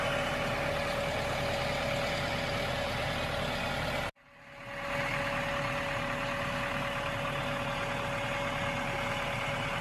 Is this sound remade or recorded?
recorded